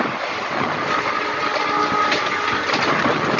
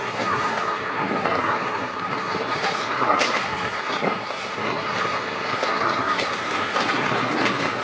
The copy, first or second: second